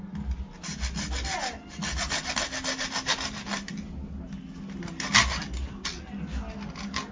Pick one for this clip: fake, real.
real